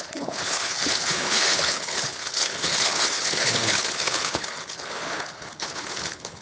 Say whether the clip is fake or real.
fake